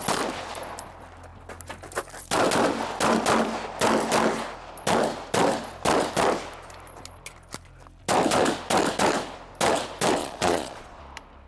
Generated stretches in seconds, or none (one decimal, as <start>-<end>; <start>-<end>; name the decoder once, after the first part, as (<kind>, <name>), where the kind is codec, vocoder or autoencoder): 10.2-11.0 (vocoder, Vocos)

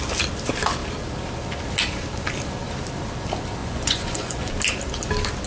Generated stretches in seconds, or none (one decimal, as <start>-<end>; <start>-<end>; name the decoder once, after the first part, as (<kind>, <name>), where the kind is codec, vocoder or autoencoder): 3.6-4.5 (vocoder, Vocos)

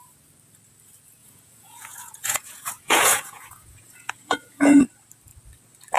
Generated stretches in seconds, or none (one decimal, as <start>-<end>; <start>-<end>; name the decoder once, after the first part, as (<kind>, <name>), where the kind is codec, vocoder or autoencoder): 1.2-4.8 (vocoder, Vocos)

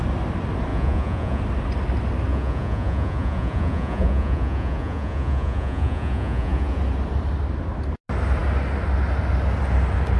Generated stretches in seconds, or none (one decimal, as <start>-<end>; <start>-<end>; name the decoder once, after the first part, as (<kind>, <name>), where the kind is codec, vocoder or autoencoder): 0.7-1.4 (vocoder, Vocos); 2.3-6.8

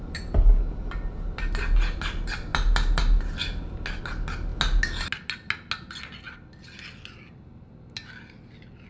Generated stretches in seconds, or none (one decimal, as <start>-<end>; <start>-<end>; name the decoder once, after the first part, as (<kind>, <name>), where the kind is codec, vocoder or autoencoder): none

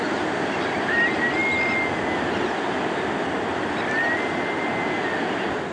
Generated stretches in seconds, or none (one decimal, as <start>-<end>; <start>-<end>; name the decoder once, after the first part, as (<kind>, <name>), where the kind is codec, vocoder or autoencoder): none

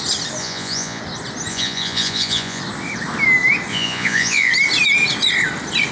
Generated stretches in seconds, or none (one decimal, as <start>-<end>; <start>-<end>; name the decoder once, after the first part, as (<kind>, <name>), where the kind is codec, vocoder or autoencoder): 0.4-1.0 (vocoder, Vocos); 1.5-2.6; 3.7-4.5